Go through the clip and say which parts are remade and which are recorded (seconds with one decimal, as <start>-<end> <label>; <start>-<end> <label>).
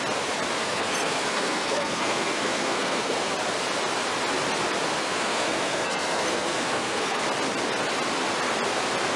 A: 0.0-0.6 recorded; 0.6-3.3 remade; 3.3-5.0 recorded; 5.0-7.2 remade; 7.2-9.2 recorded